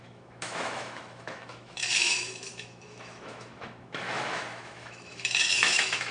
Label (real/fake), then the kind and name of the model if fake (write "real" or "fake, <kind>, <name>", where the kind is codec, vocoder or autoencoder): fake, autoencoder, DAC-VAE